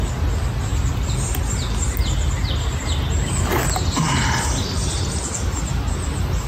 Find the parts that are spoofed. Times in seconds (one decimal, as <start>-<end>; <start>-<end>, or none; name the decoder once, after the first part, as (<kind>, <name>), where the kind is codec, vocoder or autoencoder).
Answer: none